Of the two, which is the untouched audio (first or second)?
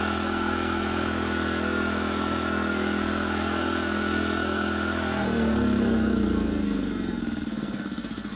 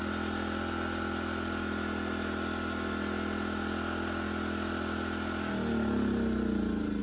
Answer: second